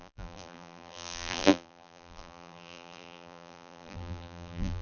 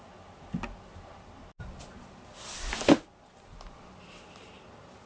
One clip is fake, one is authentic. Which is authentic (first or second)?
second